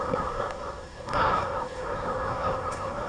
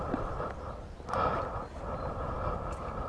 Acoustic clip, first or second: second